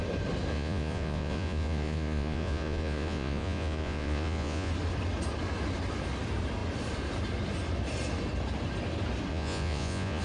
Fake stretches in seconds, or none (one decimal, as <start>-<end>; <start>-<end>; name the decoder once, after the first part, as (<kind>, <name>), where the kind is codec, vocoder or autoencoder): 0.5-4.7 (vocoder, Vocos); 9.3-10.2